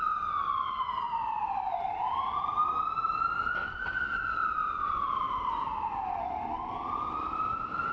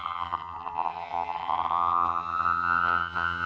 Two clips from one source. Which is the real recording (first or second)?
first